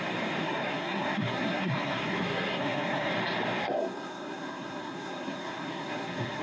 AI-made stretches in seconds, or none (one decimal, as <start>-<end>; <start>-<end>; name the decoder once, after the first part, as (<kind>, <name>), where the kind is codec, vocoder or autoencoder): 0.4-3.1 (codec, SNAC); 3.6-6.4